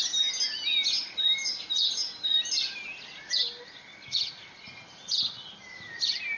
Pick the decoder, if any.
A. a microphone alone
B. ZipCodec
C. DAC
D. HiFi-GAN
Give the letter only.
A